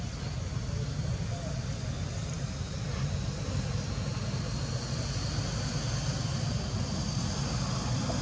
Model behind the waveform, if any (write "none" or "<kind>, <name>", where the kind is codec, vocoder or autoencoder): none